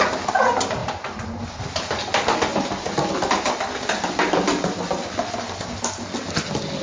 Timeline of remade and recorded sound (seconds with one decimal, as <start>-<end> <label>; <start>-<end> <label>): 0.0-6.8 recorded